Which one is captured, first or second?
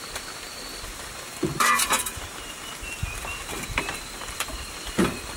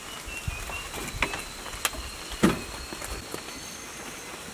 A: second